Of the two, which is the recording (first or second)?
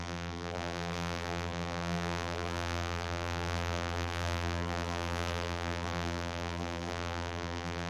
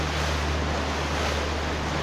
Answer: second